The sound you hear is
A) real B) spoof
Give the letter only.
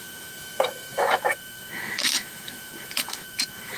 B